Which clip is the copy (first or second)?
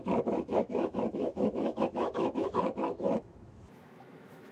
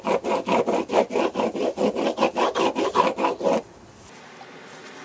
first